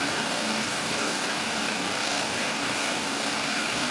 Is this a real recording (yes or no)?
no